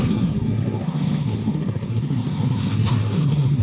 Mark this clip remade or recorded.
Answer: remade